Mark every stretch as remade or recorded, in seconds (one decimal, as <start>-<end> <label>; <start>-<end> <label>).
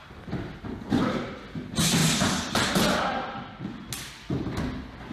0.0-2.0 remade; 2.0-5.1 recorded